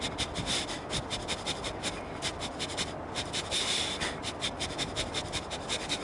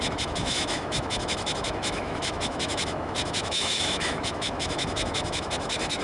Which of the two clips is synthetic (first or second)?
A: second